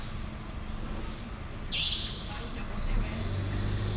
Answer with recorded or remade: recorded